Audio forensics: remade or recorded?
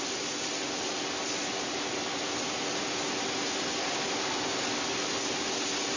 recorded